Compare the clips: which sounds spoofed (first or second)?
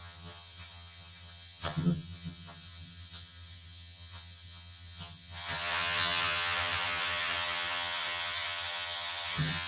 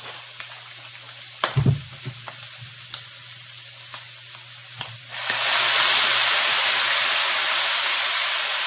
first